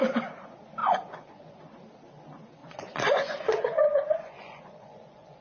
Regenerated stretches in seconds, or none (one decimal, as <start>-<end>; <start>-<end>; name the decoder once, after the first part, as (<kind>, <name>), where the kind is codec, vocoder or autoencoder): 0.8-1.6 (vocoder, Vocos); 2.6-5.4